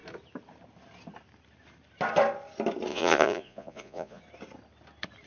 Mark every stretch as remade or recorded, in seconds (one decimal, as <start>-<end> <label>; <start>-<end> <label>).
0.0-2.9 recorded; 2.9-4.2 remade; 4.2-5.3 recorded